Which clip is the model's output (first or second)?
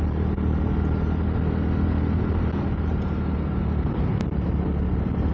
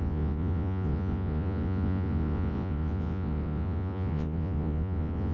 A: second